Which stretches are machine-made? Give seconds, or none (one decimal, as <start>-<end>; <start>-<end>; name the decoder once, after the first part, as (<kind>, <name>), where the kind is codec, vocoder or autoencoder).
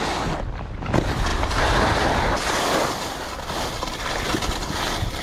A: none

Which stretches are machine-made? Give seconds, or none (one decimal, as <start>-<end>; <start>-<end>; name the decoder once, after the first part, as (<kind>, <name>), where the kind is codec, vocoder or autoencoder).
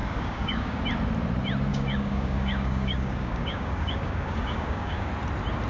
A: 0.0-0.8 (codec, DAC); 1.7-5.1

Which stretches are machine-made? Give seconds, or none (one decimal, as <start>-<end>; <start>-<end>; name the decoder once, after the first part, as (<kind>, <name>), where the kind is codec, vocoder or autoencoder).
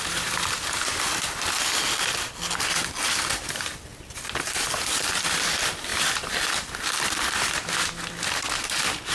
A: 3.9-5.3 (vocoder, BigVGAN v2); 5.9-6.5